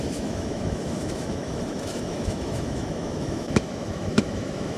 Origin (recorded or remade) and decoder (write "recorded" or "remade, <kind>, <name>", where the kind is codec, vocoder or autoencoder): remade, autoencoder, DAC-VAE